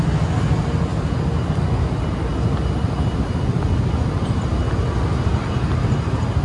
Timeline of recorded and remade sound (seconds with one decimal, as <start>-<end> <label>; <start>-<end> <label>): 0.0-6.4 recorded